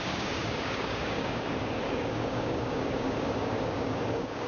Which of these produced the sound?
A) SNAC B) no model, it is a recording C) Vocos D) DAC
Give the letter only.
D